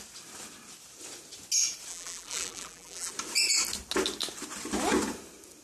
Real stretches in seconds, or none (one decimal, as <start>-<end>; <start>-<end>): 0.0-1.9; 3.1-5.6